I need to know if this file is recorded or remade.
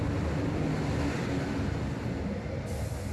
recorded